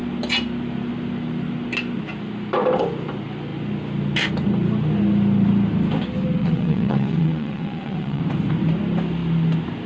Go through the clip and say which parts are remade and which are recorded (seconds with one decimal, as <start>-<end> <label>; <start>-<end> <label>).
0.0-6.4 recorded; 6.4-8.2 remade; 8.2-9.9 recorded